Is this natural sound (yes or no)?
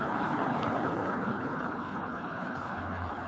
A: no